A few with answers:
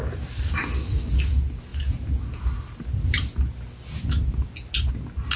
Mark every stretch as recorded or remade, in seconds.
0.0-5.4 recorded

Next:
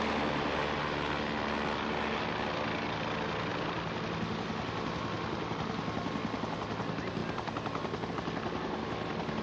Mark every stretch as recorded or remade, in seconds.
0.0-9.4 recorded

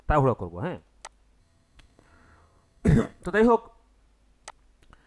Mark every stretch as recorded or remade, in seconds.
0.0-1.4 recorded; 1.4-3.2 remade; 3.2-5.1 recorded

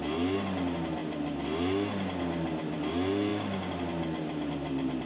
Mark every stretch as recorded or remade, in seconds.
0.0-5.1 recorded

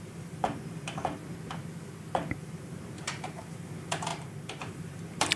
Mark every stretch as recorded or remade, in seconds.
0.0-1.2 remade; 1.2-2.3 recorded; 2.3-5.4 remade

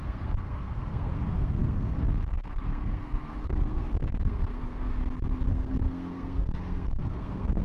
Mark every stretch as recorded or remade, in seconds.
0.0-5.0 remade; 5.0-5.5 recorded; 5.5-7.6 remade

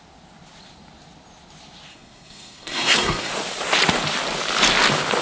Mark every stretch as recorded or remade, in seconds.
0.0-1.9 recorded; 1.9-3.3 remade; 3.3-5.2 recorded

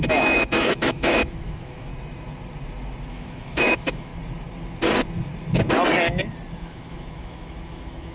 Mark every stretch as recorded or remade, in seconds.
0.0-1.9 remade; 1.9-3.1 recorded; 3.1-4.1 remade; 4.1-6.6 recorded; 6.6-8.1 remade